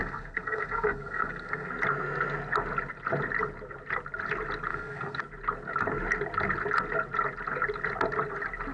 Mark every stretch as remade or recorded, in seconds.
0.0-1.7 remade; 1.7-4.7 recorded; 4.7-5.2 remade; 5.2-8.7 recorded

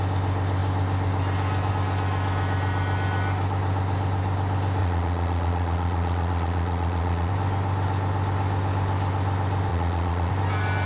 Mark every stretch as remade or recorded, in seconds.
0.0-4.8 recorded; 4.8-7.3 remade; 7.3-9.7 recorded; 9.7-10.3 remade; 10.3-10.9 recorded